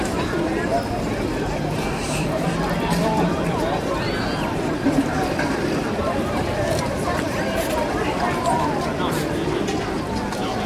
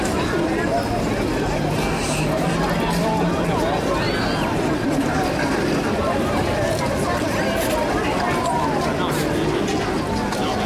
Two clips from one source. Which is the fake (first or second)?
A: first